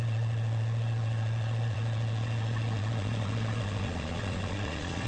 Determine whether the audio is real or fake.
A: fake